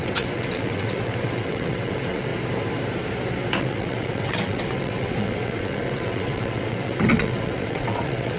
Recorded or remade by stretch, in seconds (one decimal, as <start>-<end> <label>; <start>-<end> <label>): 0.0-2.3 remade; 2.3-3.6 recorded; 3.6-8.4 remade